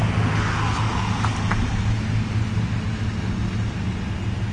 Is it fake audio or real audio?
real